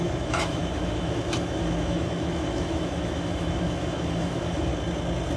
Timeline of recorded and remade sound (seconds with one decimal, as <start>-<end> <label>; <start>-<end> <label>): 0.0-4.7 remade; 4.7-5.4 recorded